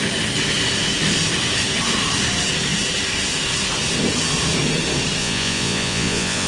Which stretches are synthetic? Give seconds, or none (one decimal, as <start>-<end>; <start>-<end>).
5.2-6.5